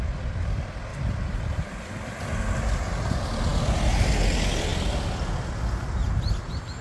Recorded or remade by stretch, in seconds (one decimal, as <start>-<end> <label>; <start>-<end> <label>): 0.0-0.9 recorded; 0.9-2.2 remade; 2.2-6.8 recorded